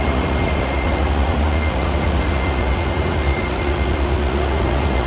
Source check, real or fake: fake